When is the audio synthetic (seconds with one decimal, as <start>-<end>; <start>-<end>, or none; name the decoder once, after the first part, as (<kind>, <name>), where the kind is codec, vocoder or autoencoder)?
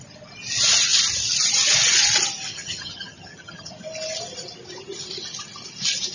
2.5-3.7 (vocoder, HiFi-GAN)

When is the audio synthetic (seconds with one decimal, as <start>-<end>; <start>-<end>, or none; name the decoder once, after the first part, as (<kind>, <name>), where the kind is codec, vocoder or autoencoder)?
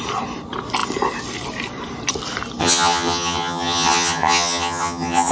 2.6-5.3 (vocoder, HiFi-GAN)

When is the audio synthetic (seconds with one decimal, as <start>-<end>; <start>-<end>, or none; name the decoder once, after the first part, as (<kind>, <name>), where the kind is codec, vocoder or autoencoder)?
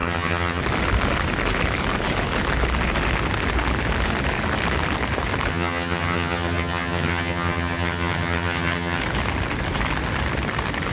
0.0-0.6 (vocoder, HiFi-GAN); 5.5-9.0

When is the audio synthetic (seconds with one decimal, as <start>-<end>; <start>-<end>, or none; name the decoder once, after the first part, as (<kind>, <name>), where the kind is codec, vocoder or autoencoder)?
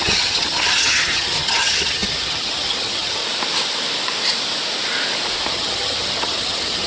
0.0-3.2 (vocoder, HiFi-GAN); 5.5-6.9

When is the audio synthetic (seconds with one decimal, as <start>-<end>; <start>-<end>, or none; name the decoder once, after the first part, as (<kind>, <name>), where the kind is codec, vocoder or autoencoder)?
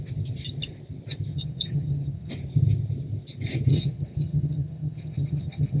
1.3-2.3 (vocoder, HiFi-GAN); 3.7-5.8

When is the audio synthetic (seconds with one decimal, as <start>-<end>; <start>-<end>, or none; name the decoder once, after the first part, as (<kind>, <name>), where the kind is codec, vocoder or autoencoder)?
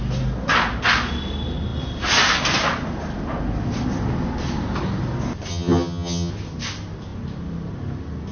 5.5-6.3 (vocoder, HiFi-GAN)